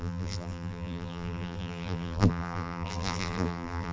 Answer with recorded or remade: remade